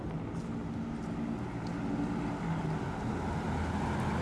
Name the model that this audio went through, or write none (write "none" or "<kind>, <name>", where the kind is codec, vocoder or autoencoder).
none